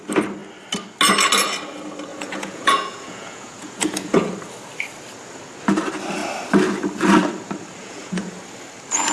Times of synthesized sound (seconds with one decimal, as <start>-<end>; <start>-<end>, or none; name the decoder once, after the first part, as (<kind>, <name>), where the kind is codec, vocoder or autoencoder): 2.1-4.3 (vocoder, Vocos); 7.8-8.4